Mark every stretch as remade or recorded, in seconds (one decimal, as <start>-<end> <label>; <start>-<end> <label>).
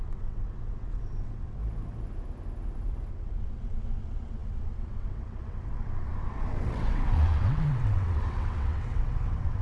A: 0.0-1.6 remade; 1.6-3.1 recorded; 3.1-9.6 remade